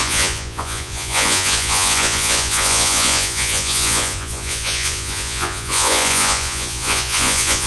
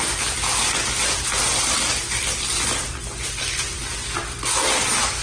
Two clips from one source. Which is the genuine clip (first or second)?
second